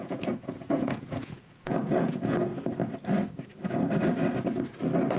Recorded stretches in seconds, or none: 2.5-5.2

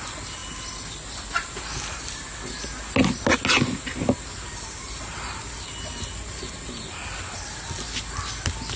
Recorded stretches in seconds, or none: 0.0-8.8